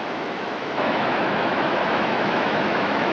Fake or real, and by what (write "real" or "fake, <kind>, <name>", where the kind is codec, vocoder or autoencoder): fake, autoencoder, DAC-VAE